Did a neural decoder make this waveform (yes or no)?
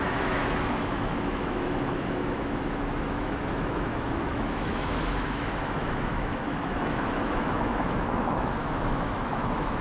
yes